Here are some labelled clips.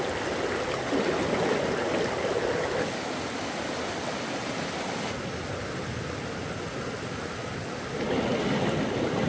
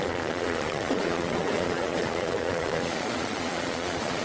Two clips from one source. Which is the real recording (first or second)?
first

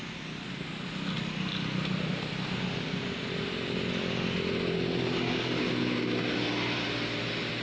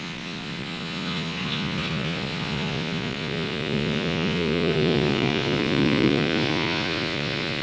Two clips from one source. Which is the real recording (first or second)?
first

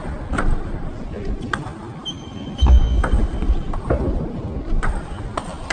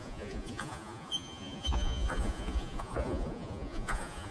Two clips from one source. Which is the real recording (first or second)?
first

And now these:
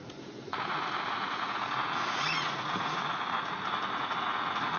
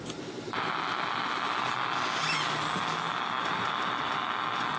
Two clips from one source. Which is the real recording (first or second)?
second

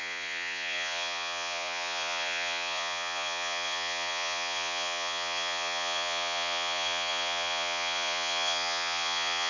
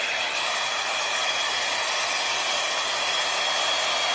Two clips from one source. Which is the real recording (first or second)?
second